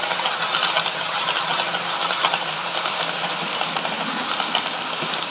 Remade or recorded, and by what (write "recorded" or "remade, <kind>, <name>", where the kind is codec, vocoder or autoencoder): recorded